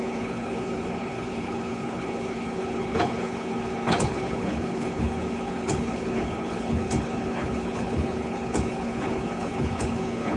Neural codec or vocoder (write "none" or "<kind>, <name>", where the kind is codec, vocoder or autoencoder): codec, HILCodec